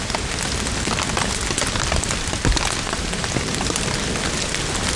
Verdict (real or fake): real